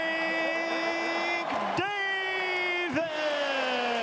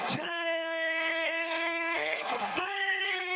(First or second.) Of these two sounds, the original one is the first